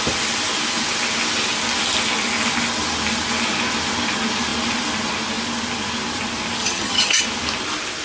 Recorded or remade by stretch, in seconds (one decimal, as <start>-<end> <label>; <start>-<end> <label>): 0.0-6.6 recorded; 6.6-7.2 remade; 7.2-8.0 recorded